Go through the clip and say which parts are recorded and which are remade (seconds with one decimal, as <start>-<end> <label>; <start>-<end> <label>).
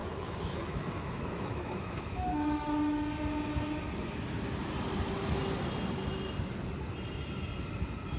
0.0-2.7 remade; 2.7-8.2 recorded